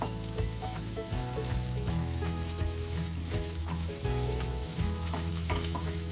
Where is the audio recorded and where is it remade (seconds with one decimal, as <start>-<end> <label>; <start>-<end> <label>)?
0.0-6.1 remade